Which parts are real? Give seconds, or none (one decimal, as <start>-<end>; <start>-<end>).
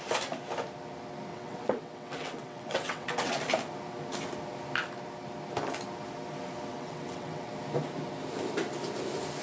0.0-1.3; 3.4-6.7; 7.5-9.4